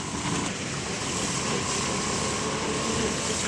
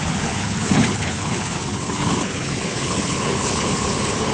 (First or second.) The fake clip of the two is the second